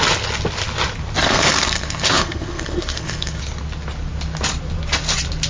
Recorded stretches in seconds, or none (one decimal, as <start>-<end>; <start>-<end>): 0.0-1.2; 3.4-5.5